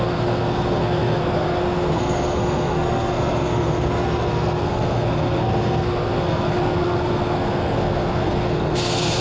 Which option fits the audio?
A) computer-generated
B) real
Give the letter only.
A